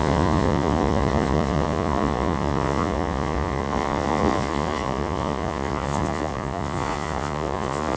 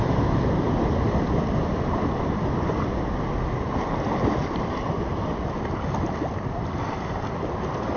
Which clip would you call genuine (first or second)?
second